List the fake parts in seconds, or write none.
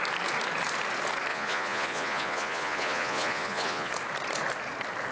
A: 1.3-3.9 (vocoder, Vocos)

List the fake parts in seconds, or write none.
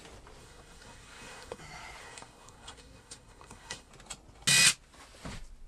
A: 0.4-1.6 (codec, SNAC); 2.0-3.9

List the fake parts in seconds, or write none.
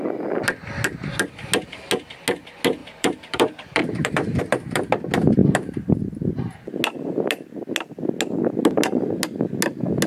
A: 2.8-4.4 (vocoder, BigVGAN v2); 5.4-5.9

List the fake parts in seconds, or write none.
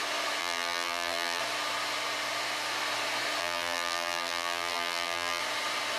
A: 0.4-1.4 (vocoder, BigVGAN v2); 3.4-5.4